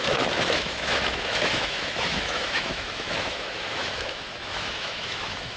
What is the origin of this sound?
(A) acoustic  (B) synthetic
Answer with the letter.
B